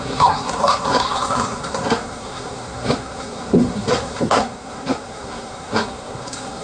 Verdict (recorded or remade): remade